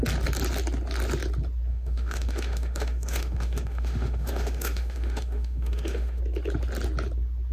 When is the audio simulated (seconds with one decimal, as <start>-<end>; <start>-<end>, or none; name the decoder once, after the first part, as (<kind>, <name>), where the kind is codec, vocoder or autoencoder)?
1.7-6.2 (autoencoder, DAC-VAE)

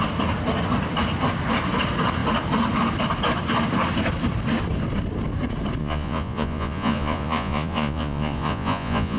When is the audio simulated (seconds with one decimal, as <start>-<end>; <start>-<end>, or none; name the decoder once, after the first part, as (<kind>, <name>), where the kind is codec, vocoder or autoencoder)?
5.8-9.2 (vocoder, Vocos)

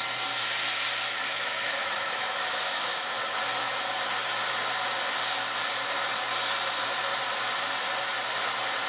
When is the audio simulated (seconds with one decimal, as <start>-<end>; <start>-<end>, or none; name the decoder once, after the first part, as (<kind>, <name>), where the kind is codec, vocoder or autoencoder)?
1.2-3.4 (autoencoder, DAC-VAE)

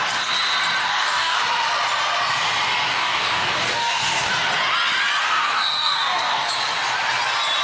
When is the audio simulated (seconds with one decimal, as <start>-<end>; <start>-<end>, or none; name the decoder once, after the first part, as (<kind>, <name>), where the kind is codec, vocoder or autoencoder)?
0.8-1.4 (codec, DAC); 2.9-4.3; 5.2-6.5

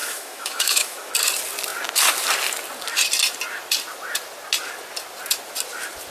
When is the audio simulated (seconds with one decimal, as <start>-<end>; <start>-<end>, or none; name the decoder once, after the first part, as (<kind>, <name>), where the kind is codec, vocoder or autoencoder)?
0.0-1.1 (autoencoder, DAC-VAE)